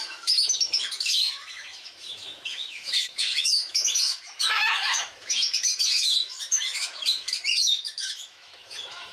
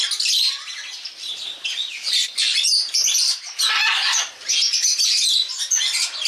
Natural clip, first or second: second